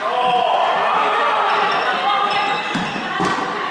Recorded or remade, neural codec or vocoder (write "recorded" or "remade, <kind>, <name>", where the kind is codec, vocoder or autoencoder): remade, vocoder, BigVGAN v2